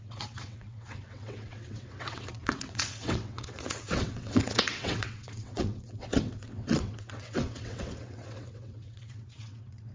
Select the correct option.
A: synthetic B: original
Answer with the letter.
A